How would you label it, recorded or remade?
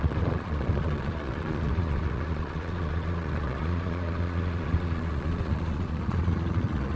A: remade